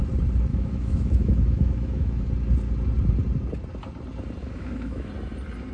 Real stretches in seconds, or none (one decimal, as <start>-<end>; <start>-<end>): 0.0-0.5; 2.3-4.4; 5.1-5.7